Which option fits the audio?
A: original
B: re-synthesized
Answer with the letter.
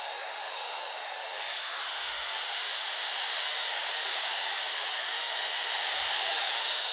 B